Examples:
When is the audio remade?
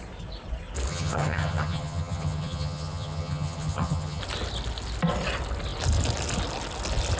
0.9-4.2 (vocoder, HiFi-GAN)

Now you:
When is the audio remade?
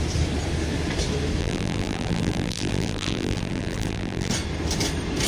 1.4-4.3 (vocoder, BigVGAN v2)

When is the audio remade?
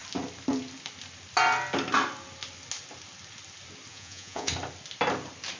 3.9-4.5 (vocoder, Vocos)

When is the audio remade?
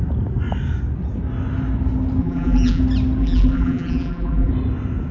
2.2-2.8 (vocoder, BigVGAN v2); 3.2-4.5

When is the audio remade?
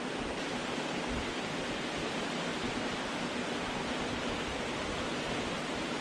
0.0-6.0 (vocoder, BigVGAN v2)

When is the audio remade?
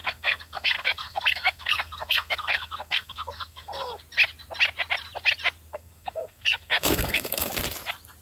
0.0-4.0 (codec, SNAC); 5.7-7.5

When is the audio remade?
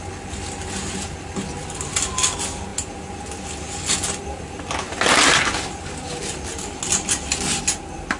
none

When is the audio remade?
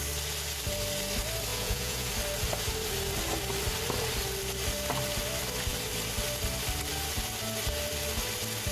1.5-2.1 (vocoder, Vocos)